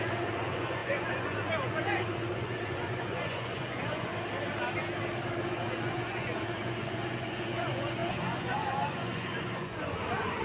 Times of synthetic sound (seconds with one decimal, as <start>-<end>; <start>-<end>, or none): 0.0-4.1; 5.5-10.4